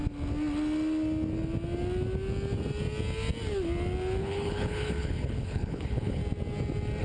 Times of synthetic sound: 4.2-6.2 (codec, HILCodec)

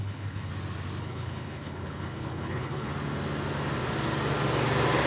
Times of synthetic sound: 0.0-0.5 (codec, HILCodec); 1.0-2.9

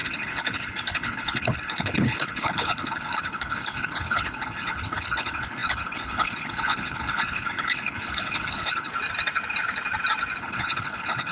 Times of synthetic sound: 0.0-8.9 (codec, HILCodec); 10.4-11.3

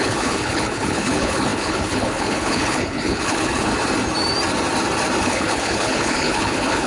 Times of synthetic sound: 0.0-3.7 (codec, HILCodec); 5.2-6.9

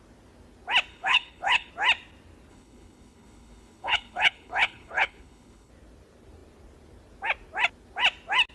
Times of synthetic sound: 0.9-1.7 (codec, HILCodec); 2.5-5.7